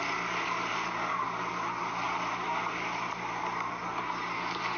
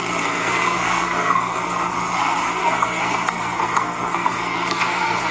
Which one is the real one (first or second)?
first